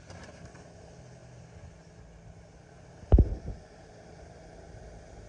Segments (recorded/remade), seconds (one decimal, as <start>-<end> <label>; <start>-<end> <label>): 0.0-5.3 recorded